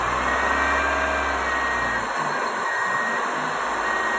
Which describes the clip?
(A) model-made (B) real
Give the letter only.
B